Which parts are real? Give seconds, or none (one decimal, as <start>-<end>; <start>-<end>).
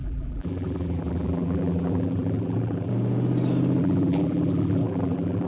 2.9-3.8